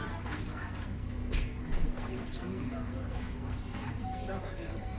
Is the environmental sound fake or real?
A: fake